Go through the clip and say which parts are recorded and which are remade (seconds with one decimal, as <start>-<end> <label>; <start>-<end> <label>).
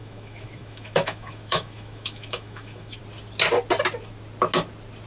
0.0-3.0 remade; 3.0-5.1 recorded